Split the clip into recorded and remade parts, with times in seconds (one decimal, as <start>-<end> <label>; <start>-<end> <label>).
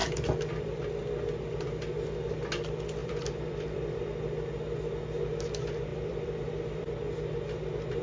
0.0-3.0 recorded; 3.0-4.0 remade; 4.0-5.9 recorded; 5.9-6.9 remade; 6.9-8.0 recorded